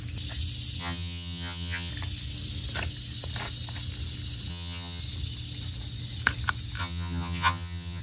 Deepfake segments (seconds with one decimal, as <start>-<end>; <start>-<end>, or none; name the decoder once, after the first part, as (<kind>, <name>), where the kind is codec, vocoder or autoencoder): 0.8-1.9 (vocoder, HiFi-GAN); 4.5-5.0; 6.8-8.0